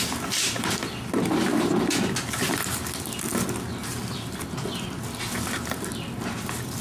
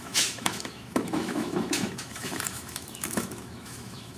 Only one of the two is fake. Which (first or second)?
second